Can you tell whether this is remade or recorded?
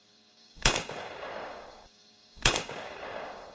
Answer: remade